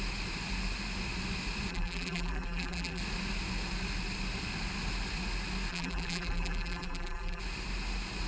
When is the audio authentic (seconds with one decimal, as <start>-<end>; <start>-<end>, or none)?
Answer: 0.0-1.7; 3.0-5.7; 7.4-8.3